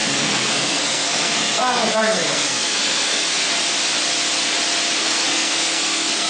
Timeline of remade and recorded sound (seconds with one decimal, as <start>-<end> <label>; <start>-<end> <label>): 0.0-3.5 remade; 3.5-5.0 recorded; 5.0-6.3 remade